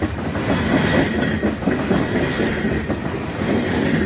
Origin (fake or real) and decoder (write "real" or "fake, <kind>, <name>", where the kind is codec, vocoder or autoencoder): real